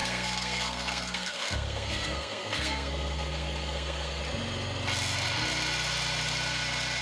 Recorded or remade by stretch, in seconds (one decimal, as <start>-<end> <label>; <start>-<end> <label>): 0.0-4.2 remade; 4.2-7.0 recorded